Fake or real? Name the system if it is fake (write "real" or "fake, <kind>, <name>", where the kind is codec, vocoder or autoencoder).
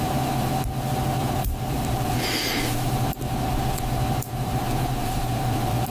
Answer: fake, vocoder, BigVGAN v2